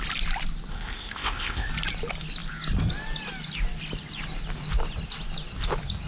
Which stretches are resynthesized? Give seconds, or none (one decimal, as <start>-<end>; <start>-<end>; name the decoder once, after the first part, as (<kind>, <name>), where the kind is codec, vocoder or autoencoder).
0.7-1.7 (codec, ZipCodec)

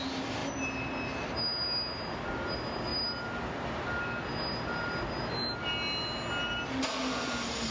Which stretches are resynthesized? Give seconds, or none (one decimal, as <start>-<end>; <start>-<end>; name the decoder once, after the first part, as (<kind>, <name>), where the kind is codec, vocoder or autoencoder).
none

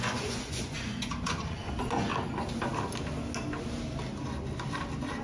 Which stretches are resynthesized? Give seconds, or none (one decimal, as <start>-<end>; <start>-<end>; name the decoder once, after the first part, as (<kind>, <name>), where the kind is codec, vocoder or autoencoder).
0.0-2.1 (vocoder, Vocos)

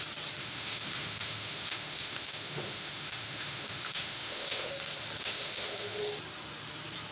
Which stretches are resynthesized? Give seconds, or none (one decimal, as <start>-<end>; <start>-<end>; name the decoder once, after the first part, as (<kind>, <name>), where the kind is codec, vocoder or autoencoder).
0.4-4.7 (autoencoder, DAC-VAE); 5.2-6.0

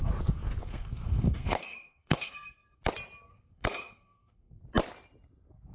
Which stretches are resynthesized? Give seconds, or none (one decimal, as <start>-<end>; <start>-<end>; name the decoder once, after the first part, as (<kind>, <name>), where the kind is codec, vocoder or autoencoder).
0.6-2.8 (codec, SNAC); 3.3-4.6

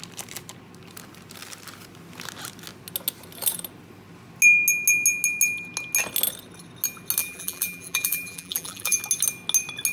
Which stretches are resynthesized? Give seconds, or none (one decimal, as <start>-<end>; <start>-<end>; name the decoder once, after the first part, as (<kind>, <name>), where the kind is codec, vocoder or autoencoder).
7.2-9.0 (vocoder, BigVGAN v2)